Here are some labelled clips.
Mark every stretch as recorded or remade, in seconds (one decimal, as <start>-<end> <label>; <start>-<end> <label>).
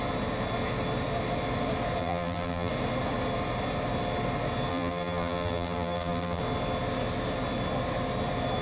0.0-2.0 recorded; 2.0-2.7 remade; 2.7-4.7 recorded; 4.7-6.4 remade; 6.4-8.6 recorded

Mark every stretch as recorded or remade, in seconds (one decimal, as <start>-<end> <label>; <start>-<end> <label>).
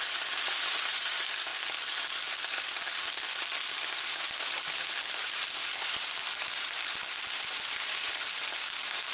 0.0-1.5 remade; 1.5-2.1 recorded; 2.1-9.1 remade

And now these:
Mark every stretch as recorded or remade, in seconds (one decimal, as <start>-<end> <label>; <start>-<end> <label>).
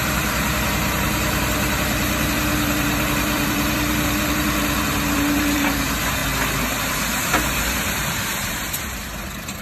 0.0-6.2 remade; 6.2-6.9 recorded; 6.9-9.6 remade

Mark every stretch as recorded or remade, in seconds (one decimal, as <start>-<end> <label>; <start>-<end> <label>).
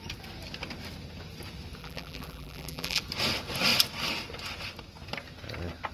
0.0-1.8 recorded; 1.8-3.0 remade; 3.0-5.9 recorded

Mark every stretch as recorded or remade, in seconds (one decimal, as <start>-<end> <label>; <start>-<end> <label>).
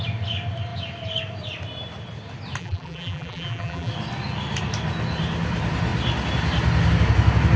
0.0-2.6 recorded; 2.6-3.9 remade; 3.9-7.6 recorded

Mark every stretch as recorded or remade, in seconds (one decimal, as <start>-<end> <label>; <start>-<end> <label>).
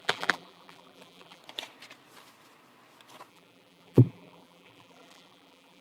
0.0-1.4 remade; 1.4-3.3 recorded; 3.3-5.8 remade